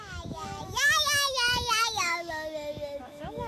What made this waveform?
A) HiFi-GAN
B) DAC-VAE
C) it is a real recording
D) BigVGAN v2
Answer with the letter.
B